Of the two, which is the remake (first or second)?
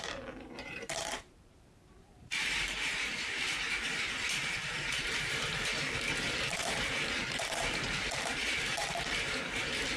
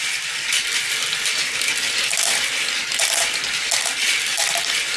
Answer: first